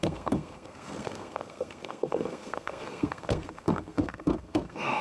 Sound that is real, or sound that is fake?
fake